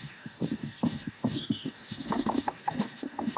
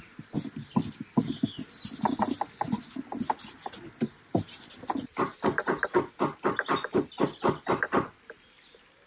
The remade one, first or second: first